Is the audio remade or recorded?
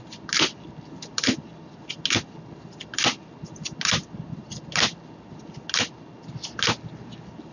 recorded